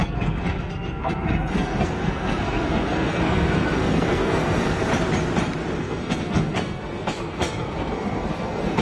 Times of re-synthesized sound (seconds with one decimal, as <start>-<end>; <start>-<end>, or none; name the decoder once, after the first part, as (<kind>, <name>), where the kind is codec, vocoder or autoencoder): 0.0-4.9 (codec, SNAC); 5.8-8.8